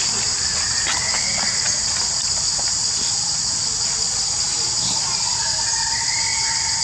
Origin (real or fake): real